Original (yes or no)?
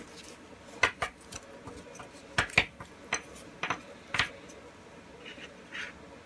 yes